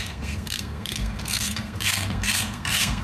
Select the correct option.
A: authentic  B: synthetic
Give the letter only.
B